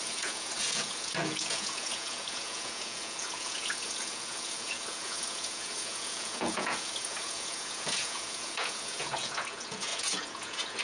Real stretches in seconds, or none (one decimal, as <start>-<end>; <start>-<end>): none